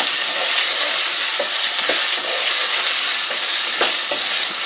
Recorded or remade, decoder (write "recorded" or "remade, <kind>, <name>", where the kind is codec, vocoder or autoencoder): recorded